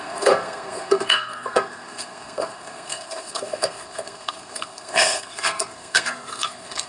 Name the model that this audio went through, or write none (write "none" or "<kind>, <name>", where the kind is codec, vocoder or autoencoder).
codec, SNAC